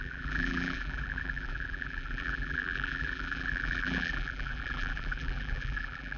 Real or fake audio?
fake